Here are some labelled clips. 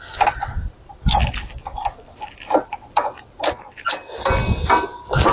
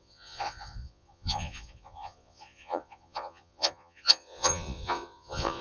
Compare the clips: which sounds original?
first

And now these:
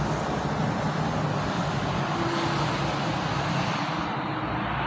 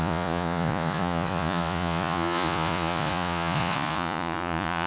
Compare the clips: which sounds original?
first